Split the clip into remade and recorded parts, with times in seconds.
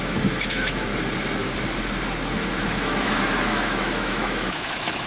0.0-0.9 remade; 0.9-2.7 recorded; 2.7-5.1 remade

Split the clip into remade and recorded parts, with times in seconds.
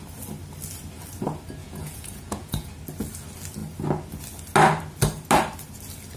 0.0-1.6 recorded; 1.6-2.7 remade; 2.7-6.2 recorded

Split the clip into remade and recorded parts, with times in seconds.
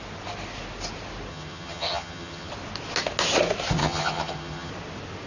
0.0-1.3 recorded; 1.3-2.5 remade; 2.5-3.8 recorded; 3.8-4.7 remade; 4.7-5.3 recorded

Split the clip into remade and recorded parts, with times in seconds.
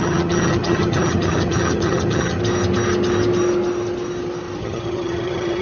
0.0-2.4 remade; 2.4-4.6 recorded; 4.6-5.6 remade